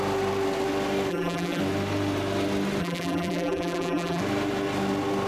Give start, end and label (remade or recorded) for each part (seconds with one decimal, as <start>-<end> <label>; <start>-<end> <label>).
0.0-1.1 recorded; 1.1-1.6 remade; 1.6-2.8 recorded; 2.8-4.2 remade; 4.2-5.3 recorded